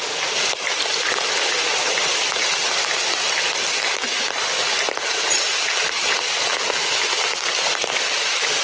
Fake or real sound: real